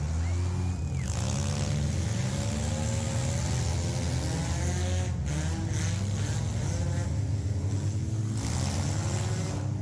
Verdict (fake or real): real